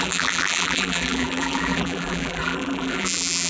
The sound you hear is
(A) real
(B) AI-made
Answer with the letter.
B